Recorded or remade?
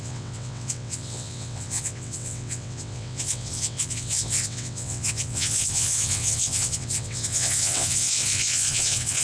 remade